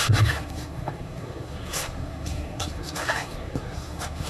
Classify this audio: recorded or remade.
remade